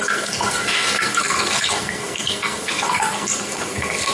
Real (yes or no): no